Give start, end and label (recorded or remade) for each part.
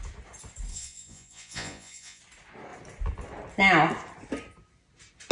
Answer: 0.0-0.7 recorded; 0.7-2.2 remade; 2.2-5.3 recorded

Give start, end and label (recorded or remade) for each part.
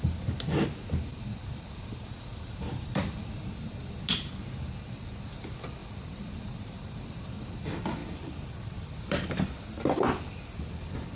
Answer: 0.0-1.1 recorded; 1.1-3.5 remade; 3.5-5.8 recorded; 5.8-7.6 remade; 7.6-8.0 recorded; 8.0-9.8 remade; 9.8-11.2 recorded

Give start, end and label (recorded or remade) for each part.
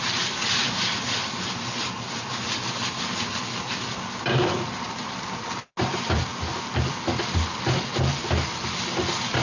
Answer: 0.0-9.4 recorded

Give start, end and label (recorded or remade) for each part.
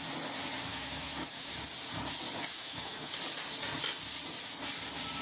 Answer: 0.0-0.7 recorded; 0.7-1.5 remade; 1.5-2.5 recorded; 2.5-3.1 remade; 3.1-5.2 recorded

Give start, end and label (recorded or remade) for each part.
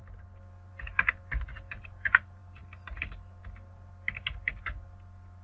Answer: 0.0-5.4 recorded